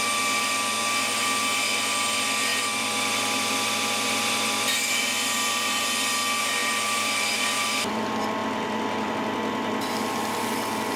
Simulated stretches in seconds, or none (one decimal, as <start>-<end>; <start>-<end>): 2.5-5.8; 6.6-8.0; 8.4-9.1